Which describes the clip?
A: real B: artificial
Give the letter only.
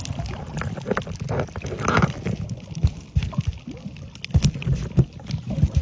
A